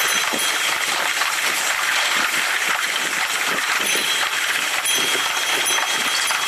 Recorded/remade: remade